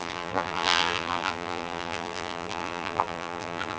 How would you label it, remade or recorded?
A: remade